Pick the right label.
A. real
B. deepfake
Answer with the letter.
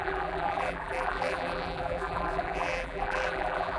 B